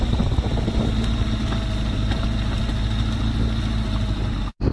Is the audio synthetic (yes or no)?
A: no